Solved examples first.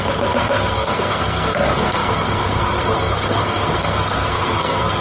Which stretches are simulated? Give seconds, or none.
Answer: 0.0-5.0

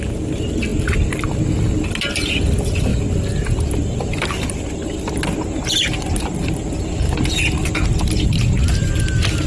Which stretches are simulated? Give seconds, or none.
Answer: none

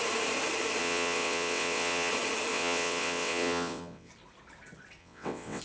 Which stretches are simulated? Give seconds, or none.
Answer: 0.8-2.1; 2.5-4.1; 5.0-5.6

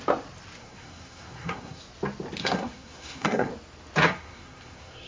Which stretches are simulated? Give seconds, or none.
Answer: 0.6-1.8; 2.4-3.5; 4.0-5.1

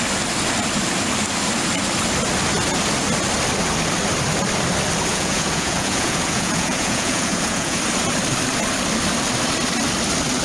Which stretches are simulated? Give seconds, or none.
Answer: 5.1-7.8

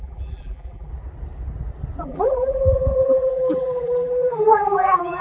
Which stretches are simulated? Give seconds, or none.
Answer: 0.0-0.9; 2.0-5.2